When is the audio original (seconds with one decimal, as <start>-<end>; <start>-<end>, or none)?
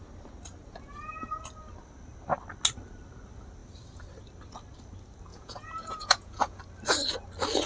0.0-5.3; 6.6-7.7